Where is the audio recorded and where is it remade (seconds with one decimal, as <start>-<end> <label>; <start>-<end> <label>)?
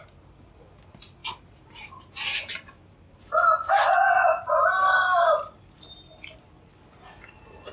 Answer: 0.0-7.7 recorded